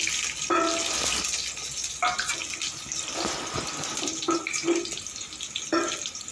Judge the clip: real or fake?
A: real